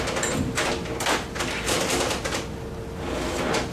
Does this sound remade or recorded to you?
recorded